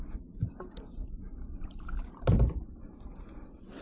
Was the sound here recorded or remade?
recorded